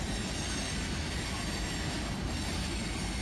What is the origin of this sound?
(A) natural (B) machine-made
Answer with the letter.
A